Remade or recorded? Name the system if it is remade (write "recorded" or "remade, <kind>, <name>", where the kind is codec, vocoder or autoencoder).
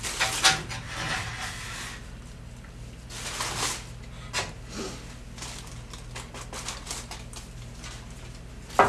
recorded